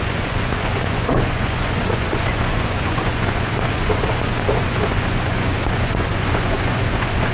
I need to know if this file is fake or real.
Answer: fake